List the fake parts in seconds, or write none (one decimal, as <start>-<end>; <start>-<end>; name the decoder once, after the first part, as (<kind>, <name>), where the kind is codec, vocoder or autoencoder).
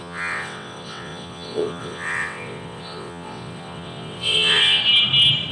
0.0-4.8 (vocoder, WaveNeXt)